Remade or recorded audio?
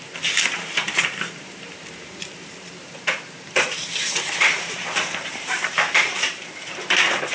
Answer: remade